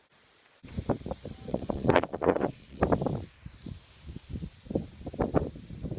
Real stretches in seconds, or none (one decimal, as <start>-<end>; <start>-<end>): 0.0-1.5; 2.8-6.0